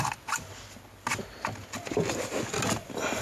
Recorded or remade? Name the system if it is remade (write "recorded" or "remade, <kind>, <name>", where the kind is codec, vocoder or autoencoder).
recorded